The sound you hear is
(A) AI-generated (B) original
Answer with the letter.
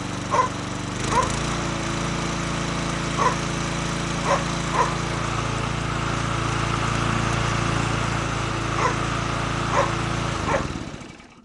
B